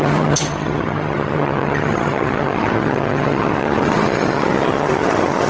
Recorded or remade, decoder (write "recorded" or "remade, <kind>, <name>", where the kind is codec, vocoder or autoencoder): remade, vocoder, HiFi-GAN